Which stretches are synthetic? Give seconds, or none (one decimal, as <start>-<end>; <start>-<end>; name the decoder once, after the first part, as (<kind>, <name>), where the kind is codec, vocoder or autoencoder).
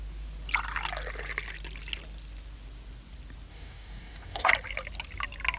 3.5-4.5 (codec, DAC)